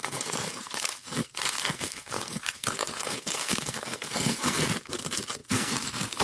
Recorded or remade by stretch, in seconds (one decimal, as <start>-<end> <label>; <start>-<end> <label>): 0.0-6.2 remade